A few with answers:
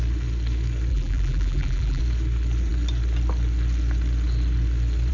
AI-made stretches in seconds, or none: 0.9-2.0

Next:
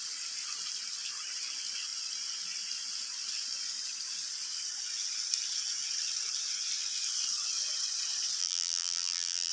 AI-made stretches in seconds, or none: 8.4-9.5

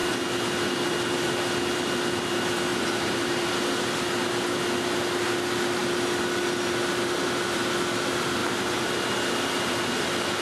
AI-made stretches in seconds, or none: 2.7-3.5; 8.4-8.9